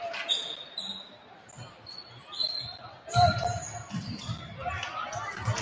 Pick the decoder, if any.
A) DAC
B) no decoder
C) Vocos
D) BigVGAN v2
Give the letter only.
B